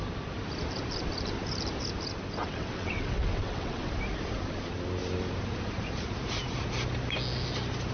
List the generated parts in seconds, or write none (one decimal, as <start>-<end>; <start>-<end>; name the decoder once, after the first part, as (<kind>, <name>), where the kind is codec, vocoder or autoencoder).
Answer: 2.4-3.9 (vocoder, WaveNeXt)